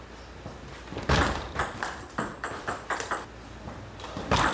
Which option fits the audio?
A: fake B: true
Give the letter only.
B